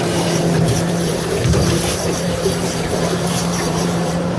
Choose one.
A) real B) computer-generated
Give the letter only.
B